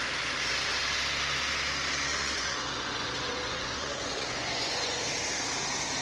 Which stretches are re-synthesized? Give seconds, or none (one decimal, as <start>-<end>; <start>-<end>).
2.1-5.1